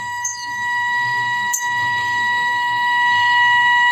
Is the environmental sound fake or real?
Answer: fake